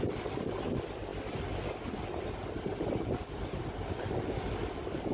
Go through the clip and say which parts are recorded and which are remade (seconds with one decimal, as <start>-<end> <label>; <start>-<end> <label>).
0.0-5.1 recorded